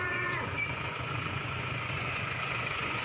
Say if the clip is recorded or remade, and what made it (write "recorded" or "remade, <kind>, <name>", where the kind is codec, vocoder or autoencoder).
remade, vocoder, Vocos